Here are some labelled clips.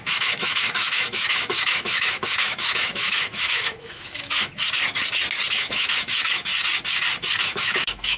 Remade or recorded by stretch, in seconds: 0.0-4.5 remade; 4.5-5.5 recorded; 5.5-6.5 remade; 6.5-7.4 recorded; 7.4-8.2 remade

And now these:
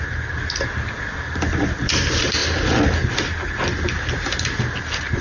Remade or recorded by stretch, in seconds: 0.0-5.2 recorded